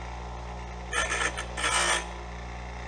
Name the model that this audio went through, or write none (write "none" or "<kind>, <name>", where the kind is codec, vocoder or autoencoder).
none